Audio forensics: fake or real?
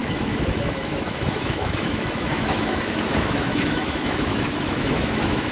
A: fake